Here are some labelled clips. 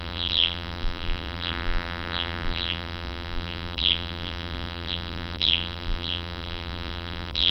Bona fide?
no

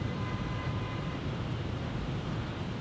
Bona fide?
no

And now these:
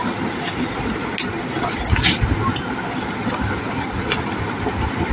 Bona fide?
yes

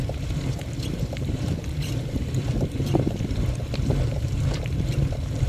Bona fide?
no